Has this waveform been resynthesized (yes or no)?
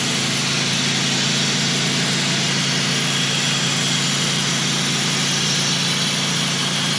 no